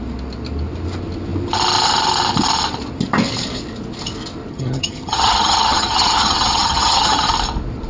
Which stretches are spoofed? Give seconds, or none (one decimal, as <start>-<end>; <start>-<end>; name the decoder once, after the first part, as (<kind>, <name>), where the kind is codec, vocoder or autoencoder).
4.5-7.3 (vocoder, HiFi-GAN)